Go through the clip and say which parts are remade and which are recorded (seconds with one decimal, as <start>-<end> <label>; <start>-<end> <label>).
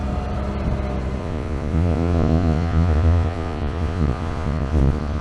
0.0-1.2 recorded; 1.2-5.2 remade